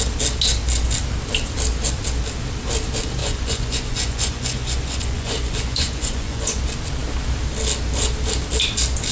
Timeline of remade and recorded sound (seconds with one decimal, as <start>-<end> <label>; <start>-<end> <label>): 0.0-3.2 recorded; 3.2-6.6 remade; 6.6-9.1 recorded